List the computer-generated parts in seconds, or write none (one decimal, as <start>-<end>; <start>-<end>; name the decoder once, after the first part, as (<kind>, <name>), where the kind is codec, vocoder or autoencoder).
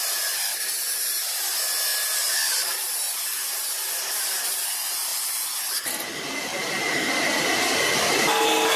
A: 1.9-3.2 (vocoder, BigVGAN v2)